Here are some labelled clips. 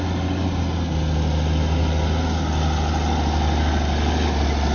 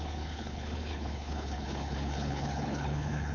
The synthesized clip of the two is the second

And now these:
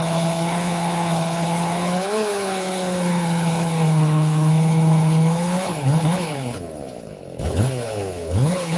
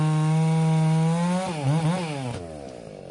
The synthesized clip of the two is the first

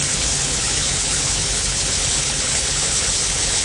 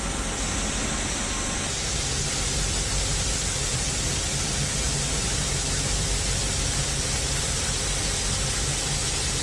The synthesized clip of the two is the first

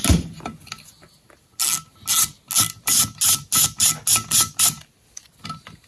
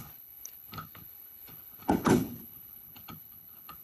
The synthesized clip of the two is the second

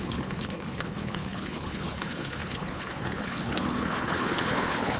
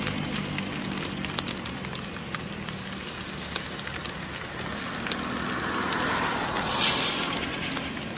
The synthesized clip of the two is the first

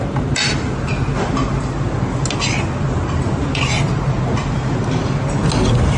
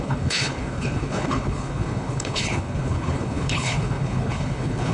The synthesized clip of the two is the second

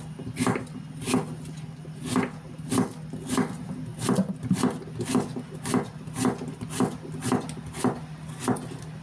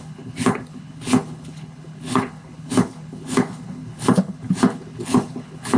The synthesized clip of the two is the second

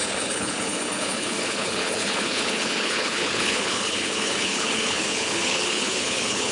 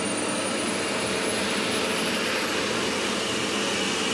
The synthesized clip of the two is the first